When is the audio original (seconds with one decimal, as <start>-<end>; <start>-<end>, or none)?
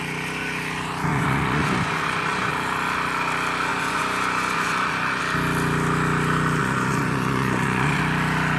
0.0-1.1; 2.5-3.7; 5.2-6.6; 8.0-8.6